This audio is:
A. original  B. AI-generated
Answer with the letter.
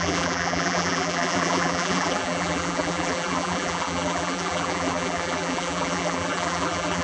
B